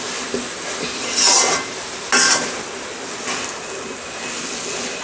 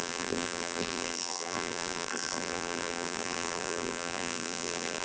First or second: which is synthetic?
second